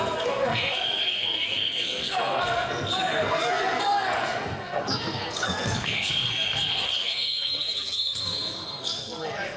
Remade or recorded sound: remade